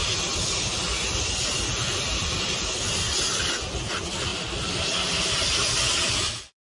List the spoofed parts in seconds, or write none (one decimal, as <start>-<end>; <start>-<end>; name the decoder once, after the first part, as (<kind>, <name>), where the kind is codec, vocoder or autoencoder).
none